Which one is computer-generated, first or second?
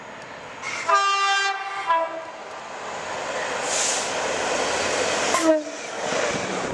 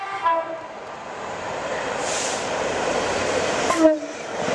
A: second